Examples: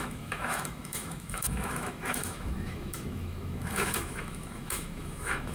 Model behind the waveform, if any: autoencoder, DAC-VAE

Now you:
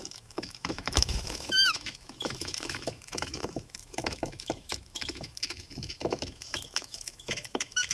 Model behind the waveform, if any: autoencoder, DAC-VAE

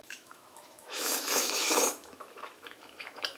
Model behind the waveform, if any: autoencoder, DAC-VAE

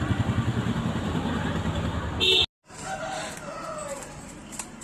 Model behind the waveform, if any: none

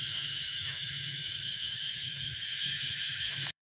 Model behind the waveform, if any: autoencoder, DAC-VAE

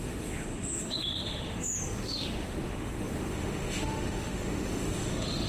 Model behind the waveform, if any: autoencoder, DAC-VAE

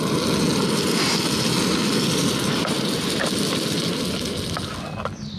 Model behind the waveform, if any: none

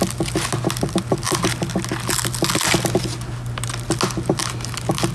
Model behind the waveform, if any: none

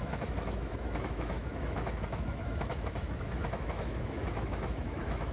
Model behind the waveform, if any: autoencoder, DAC-VAE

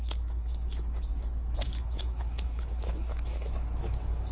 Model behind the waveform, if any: autoencoder, DAC-VAE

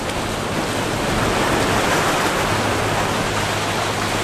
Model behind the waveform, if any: none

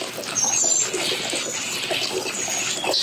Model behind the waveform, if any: none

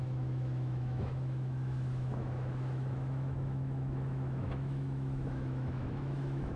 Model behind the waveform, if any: autoencoder, DAC-VAE